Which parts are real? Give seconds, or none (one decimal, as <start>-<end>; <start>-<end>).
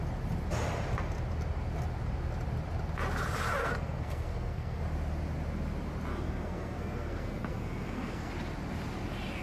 0.0-3.6; 4.8-6.1; 8.3-9.4